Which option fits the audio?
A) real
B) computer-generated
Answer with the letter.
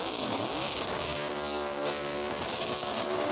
B